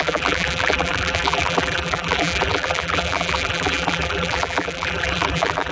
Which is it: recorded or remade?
remade